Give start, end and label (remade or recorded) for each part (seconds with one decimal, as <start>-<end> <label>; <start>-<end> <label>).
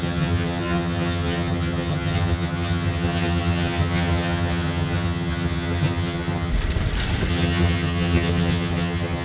0.0-6.5 remade; 6.5-7.3 recorded; 7.3-9.2 remade